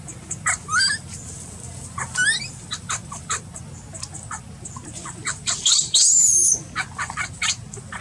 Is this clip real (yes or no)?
yes